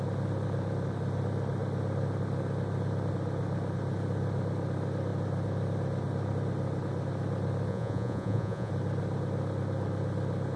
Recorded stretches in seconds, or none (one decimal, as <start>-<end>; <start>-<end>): 0.0-7.7; 8.7-10.6